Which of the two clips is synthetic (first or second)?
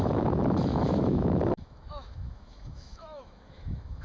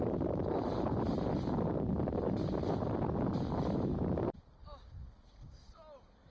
first